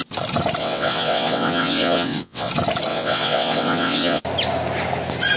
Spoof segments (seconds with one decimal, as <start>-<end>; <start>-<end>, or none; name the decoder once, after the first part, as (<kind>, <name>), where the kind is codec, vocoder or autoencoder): 0.6-2.5 (vocoder, WaveNeXt); 2.9-4.2